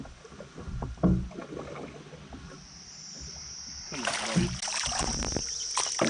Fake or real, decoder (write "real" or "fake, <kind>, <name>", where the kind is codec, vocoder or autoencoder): real